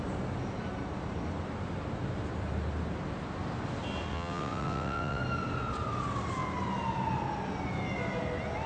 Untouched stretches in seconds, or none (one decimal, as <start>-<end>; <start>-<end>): 0.0-4.1; 5.2-8.7